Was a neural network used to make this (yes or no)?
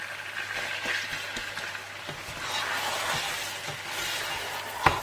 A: no